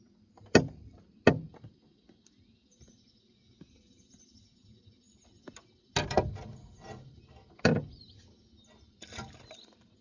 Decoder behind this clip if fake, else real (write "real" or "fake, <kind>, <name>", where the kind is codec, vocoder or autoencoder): real